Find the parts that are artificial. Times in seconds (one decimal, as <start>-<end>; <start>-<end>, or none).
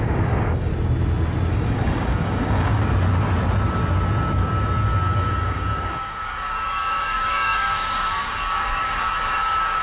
0.0-0.7; 1.5-2.8; 5.1-9.8